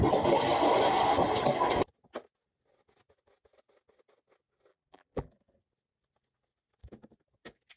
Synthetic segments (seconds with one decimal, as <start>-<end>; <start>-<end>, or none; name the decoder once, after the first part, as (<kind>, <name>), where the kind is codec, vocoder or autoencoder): 4.7-5.3 (vocoder, BigVGAN v2)